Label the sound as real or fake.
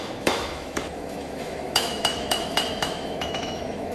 fake